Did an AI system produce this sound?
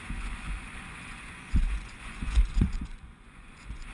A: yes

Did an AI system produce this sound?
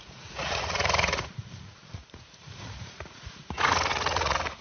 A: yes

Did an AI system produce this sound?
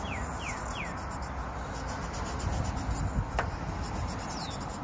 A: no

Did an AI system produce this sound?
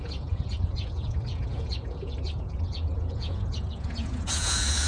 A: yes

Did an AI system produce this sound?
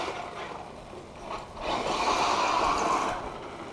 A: no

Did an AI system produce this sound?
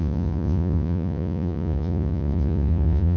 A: yes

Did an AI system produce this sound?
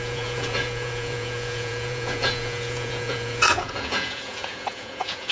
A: yes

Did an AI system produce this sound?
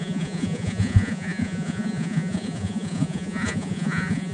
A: yes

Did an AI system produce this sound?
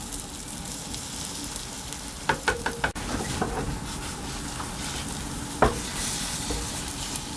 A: no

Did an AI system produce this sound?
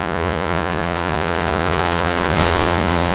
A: yes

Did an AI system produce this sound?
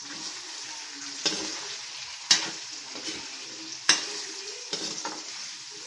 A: no